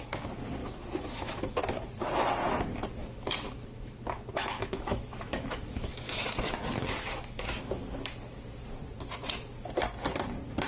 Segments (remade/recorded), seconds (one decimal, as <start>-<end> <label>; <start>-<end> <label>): 0.0-0.6 recorded; 0.6-1.6 remade; 1.6-3.0 recorded; 3.0-7.8 remade; 7.8-10.7 recorded